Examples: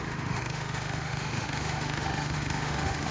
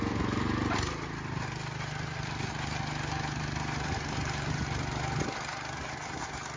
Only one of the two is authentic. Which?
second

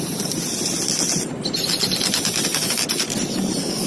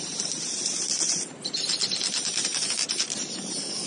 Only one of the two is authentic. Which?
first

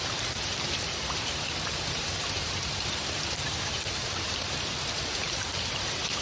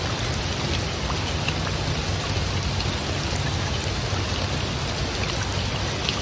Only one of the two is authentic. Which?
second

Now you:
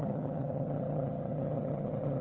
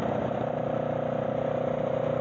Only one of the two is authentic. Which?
second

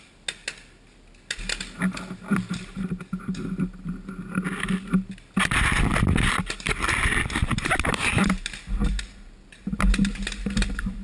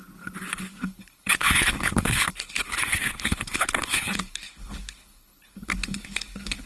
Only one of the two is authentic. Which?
first